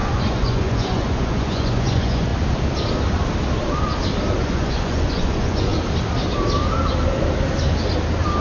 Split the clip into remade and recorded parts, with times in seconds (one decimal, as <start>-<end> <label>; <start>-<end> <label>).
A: 0.0-2.3 remade; 2.3-4.4 recorded; 4.4-5.7 remade; 5.7-8.4 recorded